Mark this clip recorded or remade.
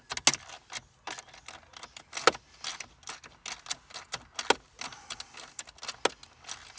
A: recorded